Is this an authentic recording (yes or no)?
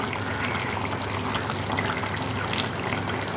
yes